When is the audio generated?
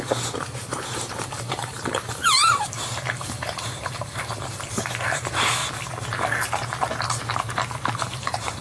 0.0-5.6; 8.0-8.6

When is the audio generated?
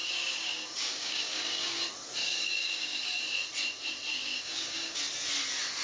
0.0-1.8; 2.2-3.2; 4.1-5.0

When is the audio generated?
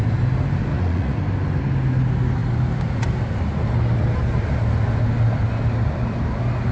0.7-1.2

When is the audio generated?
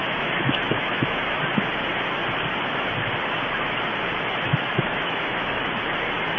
0.0-1.4; 4.5-5.8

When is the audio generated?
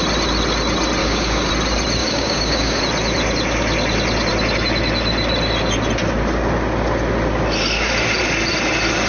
1.0-1.5; 2.0-2.8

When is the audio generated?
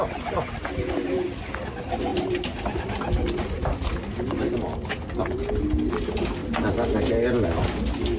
none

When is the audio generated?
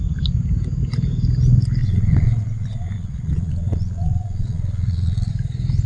1.8-5.3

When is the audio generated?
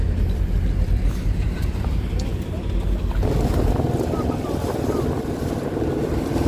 0.0-2.3; 5.2-6.5